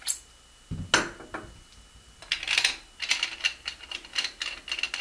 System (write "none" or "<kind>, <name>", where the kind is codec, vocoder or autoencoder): none